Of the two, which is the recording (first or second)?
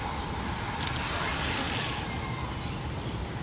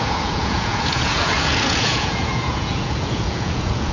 first